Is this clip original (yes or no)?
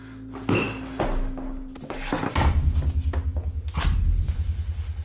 yes